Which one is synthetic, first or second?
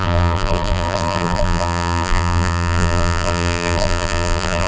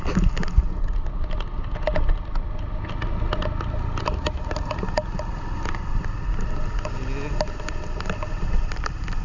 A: first